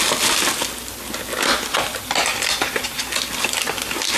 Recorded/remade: recorded